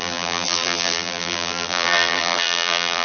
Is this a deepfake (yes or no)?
yes